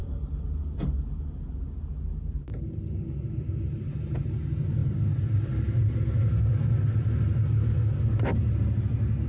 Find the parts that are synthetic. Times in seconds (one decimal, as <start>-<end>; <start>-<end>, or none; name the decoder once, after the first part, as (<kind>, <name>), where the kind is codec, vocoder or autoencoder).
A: none